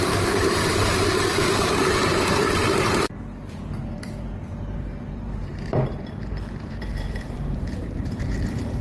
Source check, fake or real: fake